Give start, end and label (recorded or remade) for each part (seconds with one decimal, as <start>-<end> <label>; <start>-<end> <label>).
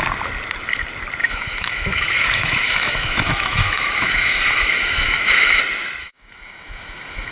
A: 0.0-1.2 recorded; 1.2-5.6 remade; 5.6-6.0 recorded; 6.0-7.3 remade